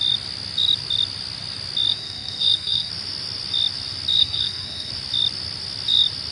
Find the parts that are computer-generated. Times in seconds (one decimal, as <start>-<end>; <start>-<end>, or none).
1.9-2.9; 4.2-4.9